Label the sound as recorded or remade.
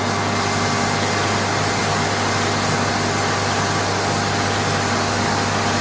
recorded